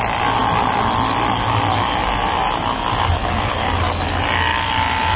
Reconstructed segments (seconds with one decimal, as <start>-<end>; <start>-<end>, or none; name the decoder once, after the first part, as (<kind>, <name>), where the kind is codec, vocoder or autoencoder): 4.5-5.2 (vocoder, BigVGAN v2)